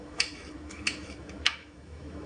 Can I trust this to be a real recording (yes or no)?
no